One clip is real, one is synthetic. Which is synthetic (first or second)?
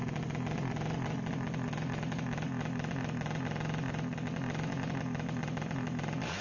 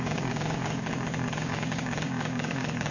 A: second